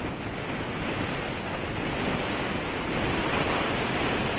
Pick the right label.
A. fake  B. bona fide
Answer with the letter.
B